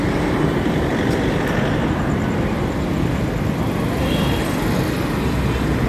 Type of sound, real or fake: real